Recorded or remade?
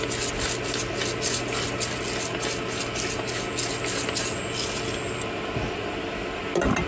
recorded